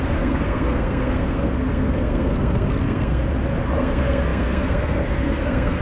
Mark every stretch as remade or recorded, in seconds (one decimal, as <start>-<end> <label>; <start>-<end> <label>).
0.0-3.2 remade; 3.2-3.8 recorded; 3.8-5.8 remade